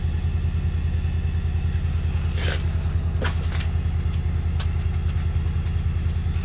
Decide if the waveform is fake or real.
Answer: real